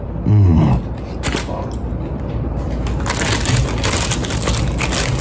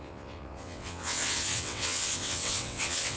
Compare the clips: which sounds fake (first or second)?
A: second